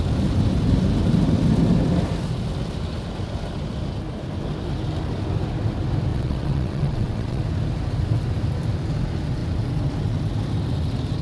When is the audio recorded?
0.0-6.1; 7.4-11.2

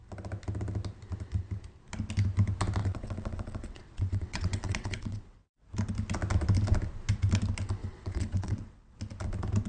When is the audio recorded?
0.0-2.8; 5.7-7.8; 9.0-9.7

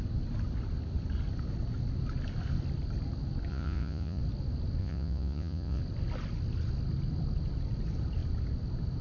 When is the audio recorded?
0.0-3.5; 4.2-4.8; 5.8-9.0

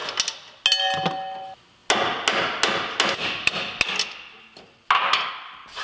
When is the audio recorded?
0.0-5.8

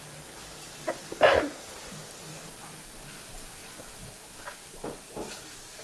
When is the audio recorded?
0.0-5.8

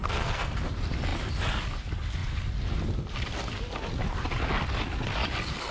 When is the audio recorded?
0.5-5.7

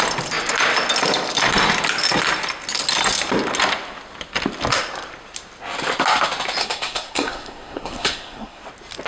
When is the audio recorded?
0.0-6.6; 8.6-9.1